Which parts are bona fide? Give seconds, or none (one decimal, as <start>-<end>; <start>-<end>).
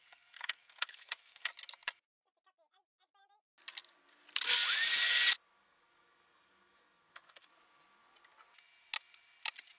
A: 1.5-5.6; 7.5-9.8